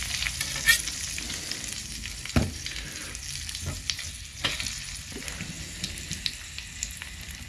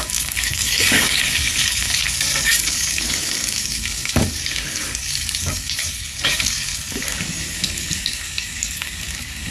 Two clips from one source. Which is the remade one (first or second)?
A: second